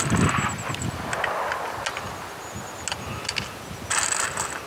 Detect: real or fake real